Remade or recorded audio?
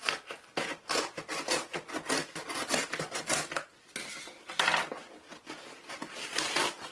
recorded